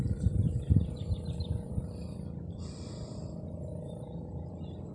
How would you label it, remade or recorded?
remade